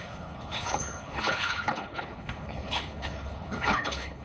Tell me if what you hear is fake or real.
fake